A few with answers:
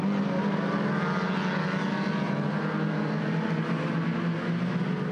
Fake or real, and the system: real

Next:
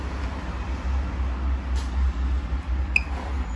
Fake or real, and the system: real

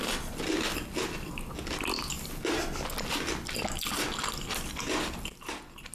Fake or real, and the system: real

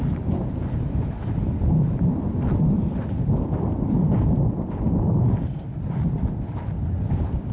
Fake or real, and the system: real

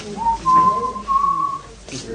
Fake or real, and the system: real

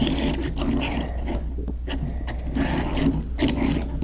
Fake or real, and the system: real